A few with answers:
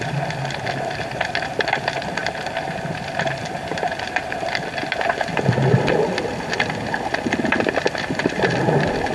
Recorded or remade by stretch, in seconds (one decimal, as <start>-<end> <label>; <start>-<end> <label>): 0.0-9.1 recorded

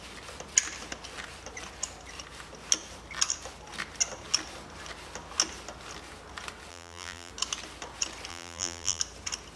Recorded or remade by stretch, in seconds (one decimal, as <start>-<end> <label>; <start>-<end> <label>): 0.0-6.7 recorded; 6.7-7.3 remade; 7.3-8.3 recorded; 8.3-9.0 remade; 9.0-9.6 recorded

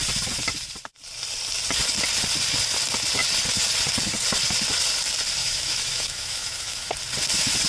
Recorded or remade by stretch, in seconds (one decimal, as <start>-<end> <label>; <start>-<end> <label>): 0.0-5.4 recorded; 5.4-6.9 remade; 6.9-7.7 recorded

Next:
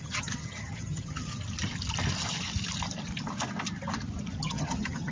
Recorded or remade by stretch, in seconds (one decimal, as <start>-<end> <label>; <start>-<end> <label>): 0.0-1.3 remade; 1.3-4.4 recorded; 4.4-5.1 remade

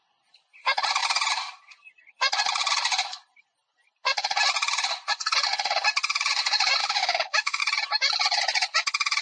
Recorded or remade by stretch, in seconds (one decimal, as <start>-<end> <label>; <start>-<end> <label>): 0.0-6.8 recorded; 6.8-7.6 remade; 7.6-9.2 recorded

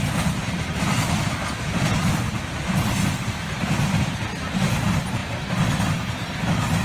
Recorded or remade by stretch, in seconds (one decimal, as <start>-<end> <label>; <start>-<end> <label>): 0.0-0.4 recorded; 0.4-4.2 remade; 4.2-6.8 recorded

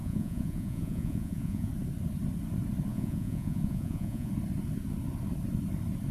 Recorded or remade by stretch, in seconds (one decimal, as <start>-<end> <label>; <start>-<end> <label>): 0.0-1.7 remade; 1.7-2.9 recorded; 2.9-4.3 remade; 4.3-6.1 recorded